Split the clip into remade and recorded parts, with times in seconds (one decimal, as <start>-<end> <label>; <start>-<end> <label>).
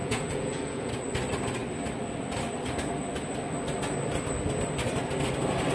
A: 0.0-0.9 remade; 0.9-5.7 recorded